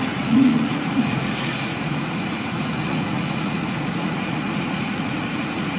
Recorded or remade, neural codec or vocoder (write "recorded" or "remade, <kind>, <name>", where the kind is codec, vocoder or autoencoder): remade, vocoder, Vocos